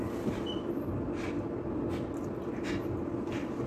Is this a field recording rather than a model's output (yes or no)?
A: yes